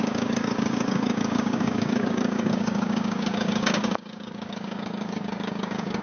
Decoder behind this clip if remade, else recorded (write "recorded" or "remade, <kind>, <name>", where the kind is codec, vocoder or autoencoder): remade, codec, DAC